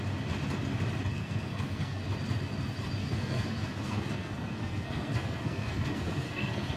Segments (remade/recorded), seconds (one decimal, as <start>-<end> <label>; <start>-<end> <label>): 0.0-1.1 recorded; 1.1-2.0 remade; 2.0-3.0 recorded; 3.0-6.8 remade